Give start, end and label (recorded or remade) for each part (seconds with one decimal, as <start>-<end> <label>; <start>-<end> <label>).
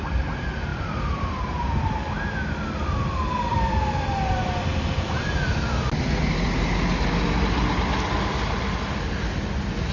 0.0-0.7 recorded; 0.7-1.4 remade; 1.4-3.5 recorded; 3.5-4.3 remade; 4.3-9.9 recorded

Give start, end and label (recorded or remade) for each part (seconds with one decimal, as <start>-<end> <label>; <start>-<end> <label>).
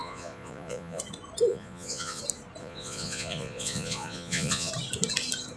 0.0-1.0 remade; 1.0-1.5 recorded; 1.5-2.2 remade; 2.2-2.6 recorded; 2.6-4.7 remade; 4.7-5.6 recorded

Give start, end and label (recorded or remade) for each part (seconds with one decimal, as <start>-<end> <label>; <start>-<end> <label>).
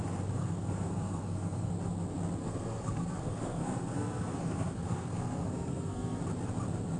0.0-0.4 recorded; 0.4-1.7 remade; 1.7-2.4 recorded; 2.4-6.2 remade; 6.2-7.0 recorded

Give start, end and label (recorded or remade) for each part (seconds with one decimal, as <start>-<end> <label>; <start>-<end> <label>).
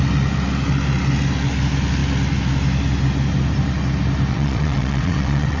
0.0-4.3 recorded; 4.3-5.6 remade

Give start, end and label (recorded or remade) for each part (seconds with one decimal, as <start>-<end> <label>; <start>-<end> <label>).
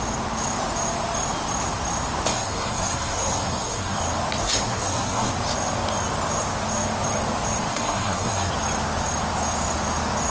0.0-2.3 recorded; 2.3-4.0 remade; 4.0-4.4 recorded; 4.4-5.3 remade; 5.3-7.7 recorded; 7.7-8.5 remade; 8.5-10.3 recorded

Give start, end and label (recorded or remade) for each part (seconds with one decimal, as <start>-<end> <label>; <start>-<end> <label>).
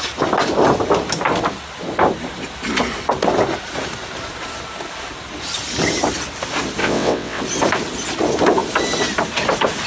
0.0-6.8 recorded; 6.8-7.4 remade; 7.4-9.9 recorded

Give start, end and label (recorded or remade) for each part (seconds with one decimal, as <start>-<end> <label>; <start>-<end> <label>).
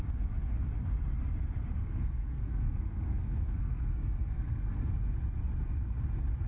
0.0-1.7 recorded; 1.7-4.9 remade; 4.9-6.5 recorded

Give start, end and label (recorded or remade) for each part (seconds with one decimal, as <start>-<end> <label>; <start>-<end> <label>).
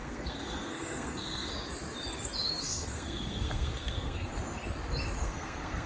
0.0-1.5 remade; 1.5-2.6 recorded; 2.6-4.3 remade; 4.3-5.2 recorded; 5.2-5.9 remade